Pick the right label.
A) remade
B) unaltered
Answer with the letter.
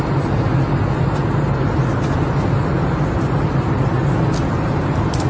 B